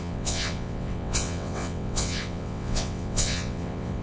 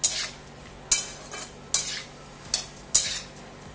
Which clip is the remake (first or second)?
first